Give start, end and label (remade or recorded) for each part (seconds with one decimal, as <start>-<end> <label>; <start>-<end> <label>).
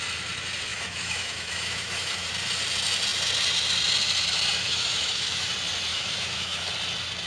0.0-0.7 recorded; 0.7-2.3 remade; 2.3-4.6 recorded; 4.6-5.5 remade; 5.5-5.9 recorded; 5.9-6.7 remade; 6.7-7.3 recorded